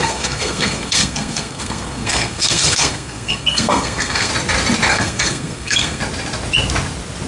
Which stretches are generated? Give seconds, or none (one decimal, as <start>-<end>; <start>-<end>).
0.0-4.3; 4.9-6.0